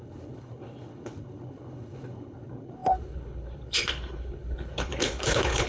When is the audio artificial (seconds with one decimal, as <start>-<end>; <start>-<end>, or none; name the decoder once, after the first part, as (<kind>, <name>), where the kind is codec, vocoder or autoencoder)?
0.0-5.7 (codec, HILCodec)